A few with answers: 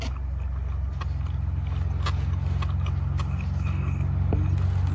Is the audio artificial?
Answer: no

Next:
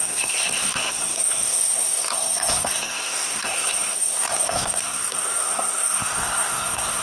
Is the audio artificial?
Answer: yes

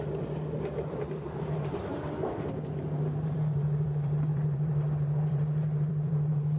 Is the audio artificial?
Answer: yes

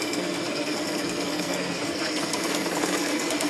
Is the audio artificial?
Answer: yes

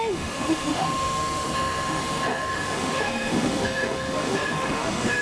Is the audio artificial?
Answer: yes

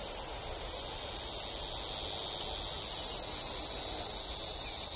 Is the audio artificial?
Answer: no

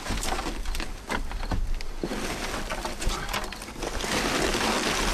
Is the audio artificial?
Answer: yes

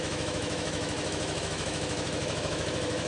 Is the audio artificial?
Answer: yes